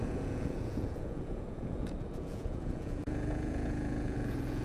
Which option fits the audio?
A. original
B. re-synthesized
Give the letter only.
B